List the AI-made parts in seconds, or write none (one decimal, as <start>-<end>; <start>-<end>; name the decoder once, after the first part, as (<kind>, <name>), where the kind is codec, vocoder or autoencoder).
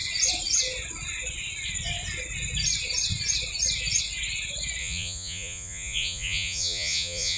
4.8-7.4 (vocoder, Vocos)